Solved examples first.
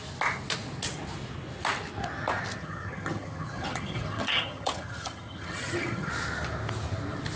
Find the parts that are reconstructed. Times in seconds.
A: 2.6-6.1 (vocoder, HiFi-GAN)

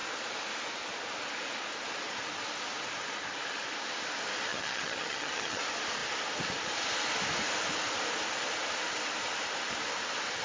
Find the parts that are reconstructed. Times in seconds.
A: 4.5-5.6 (vocoder, HiFi-GAN)

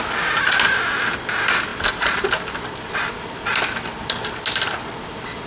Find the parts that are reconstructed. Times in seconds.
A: none

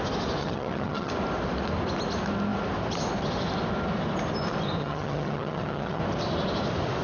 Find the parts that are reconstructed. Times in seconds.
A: 0.4-1.1 (vocoder, HiFi-GAN); 4.8-6.0

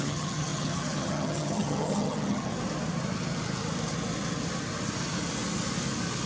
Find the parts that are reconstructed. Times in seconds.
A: 0.0-2.5 (vocoder, HiFi-GAN)